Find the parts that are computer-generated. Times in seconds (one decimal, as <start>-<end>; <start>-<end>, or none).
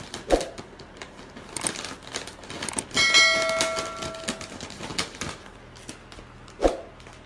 none